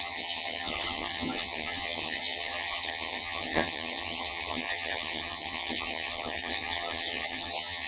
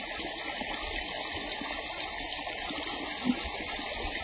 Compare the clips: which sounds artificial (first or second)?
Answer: first